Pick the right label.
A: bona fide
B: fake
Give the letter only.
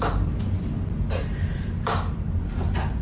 A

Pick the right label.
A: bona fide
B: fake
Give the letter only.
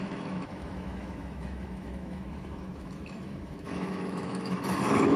B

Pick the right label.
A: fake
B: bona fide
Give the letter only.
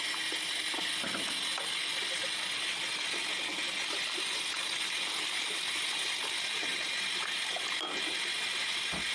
B